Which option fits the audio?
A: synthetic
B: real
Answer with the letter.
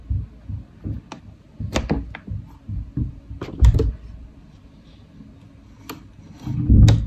B